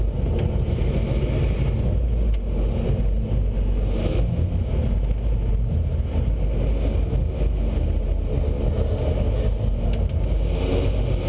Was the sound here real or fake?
real